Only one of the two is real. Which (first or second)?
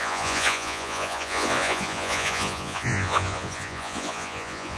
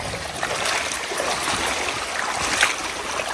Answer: second